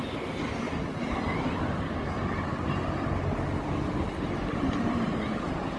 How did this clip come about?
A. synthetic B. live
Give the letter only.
B